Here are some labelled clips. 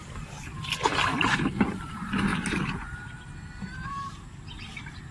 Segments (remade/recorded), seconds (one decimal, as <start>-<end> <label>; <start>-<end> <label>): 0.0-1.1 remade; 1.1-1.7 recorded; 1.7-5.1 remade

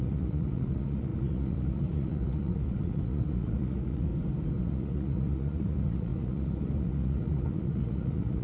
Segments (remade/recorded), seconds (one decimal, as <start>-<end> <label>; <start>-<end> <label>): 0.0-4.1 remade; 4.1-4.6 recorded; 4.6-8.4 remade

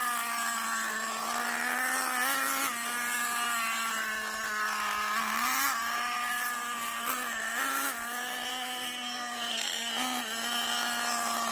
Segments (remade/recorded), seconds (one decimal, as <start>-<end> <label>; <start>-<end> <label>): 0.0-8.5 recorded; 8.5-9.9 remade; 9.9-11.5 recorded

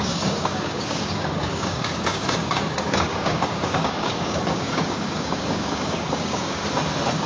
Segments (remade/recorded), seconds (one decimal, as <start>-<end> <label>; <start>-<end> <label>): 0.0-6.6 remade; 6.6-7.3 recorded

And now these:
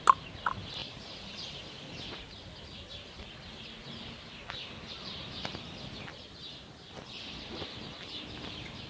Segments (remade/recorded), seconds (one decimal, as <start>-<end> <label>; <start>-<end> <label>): 0.0-8.9 recorded

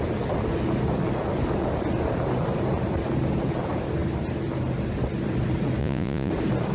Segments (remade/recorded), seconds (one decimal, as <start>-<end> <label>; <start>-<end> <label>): 0.0-5.8 recorded; 5.8-6.3 remade; 6.3-6.7 recorded

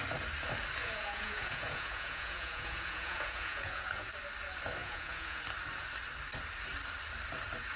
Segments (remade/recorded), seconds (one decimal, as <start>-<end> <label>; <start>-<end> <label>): 0.0-0.8 recorded; 0.8-4.1 remade; 4.1-4.8 recorded; 4.8-5.4 remade; 5.4-7.8 recorded

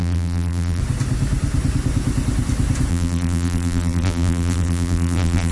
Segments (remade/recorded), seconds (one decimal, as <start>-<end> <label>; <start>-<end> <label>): 0.0-0.8 remade; 0.8-2.9 recorded; 2.9-5.5 remade